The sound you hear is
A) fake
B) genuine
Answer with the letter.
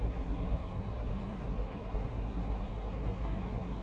A